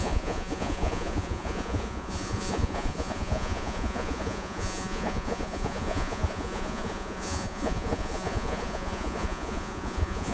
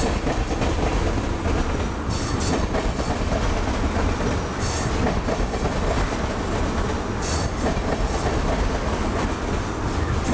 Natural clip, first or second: second